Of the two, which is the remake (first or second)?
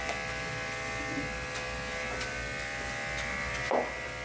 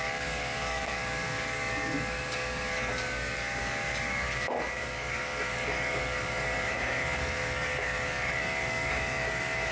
second